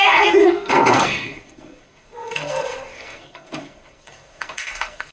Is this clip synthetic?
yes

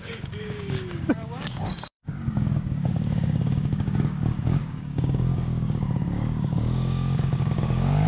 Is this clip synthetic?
yes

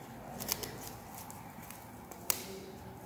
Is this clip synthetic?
no